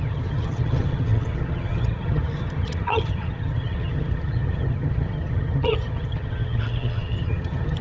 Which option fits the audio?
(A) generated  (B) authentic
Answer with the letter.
A